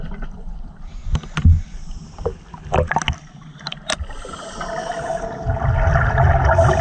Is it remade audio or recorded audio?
recorded